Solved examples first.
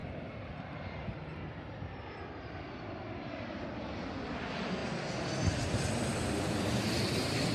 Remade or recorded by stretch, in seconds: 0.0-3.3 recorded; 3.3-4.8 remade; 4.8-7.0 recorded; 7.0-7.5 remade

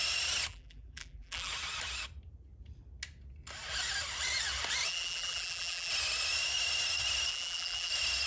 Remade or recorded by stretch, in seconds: 0.0-0.5 recorded; 0.5-1.5 remade; 1.5-4.9 recorded; 4.9-5.9 remade; 5.9-7.3 recorded; 7.3-7.9 remade; 7.9-8.3 recorded

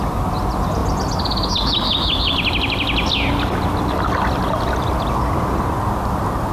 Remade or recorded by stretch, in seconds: 0.0-6.5 recorded

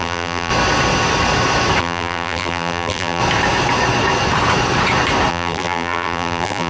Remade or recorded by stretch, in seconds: 0.0-0.5 remade; 0.5-1.8 recorded; 1.8-3.2 remade; 3.2-5.3 recorded; 5.3-6.7 remade

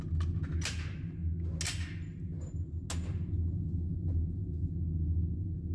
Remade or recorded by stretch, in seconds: 0.0-5.7 recorded

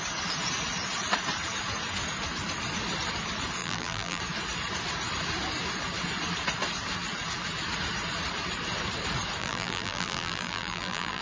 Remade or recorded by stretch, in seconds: 0.0-3.6 recorded; 3.6-4.2 remade; 4.2-9.4 recorded; 9.4-11.2 remade

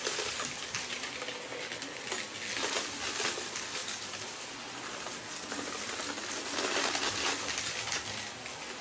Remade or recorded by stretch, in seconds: 0.0-8.8 recorded